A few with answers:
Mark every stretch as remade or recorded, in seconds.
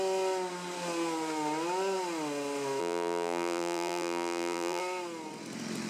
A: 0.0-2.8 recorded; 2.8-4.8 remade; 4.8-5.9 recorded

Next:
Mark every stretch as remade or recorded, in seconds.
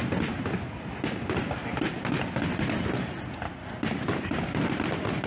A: 0.0-5.3 recorded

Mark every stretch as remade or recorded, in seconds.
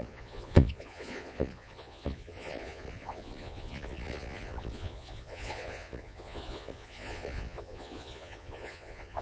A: 0.0-9.2 remade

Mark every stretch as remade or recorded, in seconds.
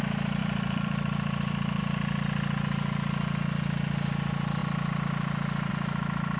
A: 0.0-0.4 recorded; 0.4-1.8 remade; 1.8-6.4 recorded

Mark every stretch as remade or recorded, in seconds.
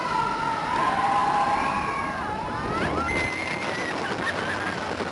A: 0.0-5.1 recorded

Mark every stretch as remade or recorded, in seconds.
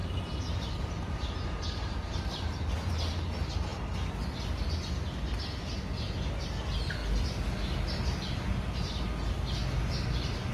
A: 0.0-2.9 remade; 2.9-10.5 recorded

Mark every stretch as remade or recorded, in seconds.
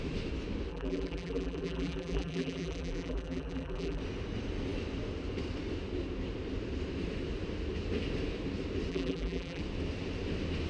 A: 0.0-0.7 recorded; 0.7-4.0 remade; 4.0-8.9 recorded; 8.9-9.6 remade; 9.6-10.7 recorded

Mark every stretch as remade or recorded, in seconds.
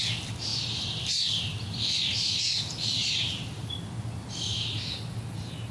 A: 0.0-5.7 recorded